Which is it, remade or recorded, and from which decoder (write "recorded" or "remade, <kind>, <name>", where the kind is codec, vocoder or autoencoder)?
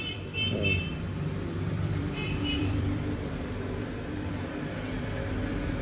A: remade, vocoder, BigVGAN v2